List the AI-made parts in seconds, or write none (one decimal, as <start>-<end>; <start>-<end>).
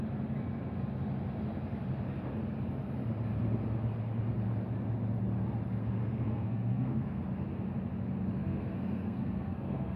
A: 5.8-7.2; 8.4-10.0